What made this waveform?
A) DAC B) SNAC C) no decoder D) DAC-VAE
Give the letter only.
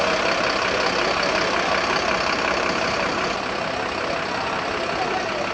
C